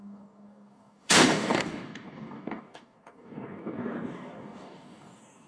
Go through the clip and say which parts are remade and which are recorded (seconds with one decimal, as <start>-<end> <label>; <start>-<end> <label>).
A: 0.0-5.5 remade